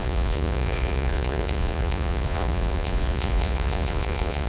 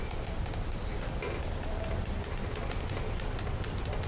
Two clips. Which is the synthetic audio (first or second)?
first